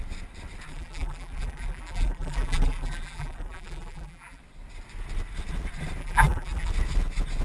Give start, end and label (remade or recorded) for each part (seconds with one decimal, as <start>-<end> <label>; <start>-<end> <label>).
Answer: 0.0-0.7 recorded; 0.7-4.4 remade; 4.4-6.0 recorded; 6.0-6.7 remade; 6.7-7.4 recorded